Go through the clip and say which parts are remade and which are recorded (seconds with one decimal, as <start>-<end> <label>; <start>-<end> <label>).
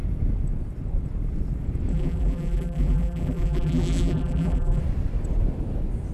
0.0-1.9 recorded; 1.9-4.8 remade; 4.8-6.1 recorded